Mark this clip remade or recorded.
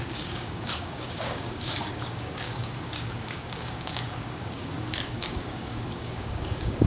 remade